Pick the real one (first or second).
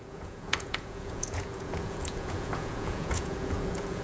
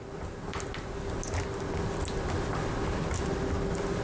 second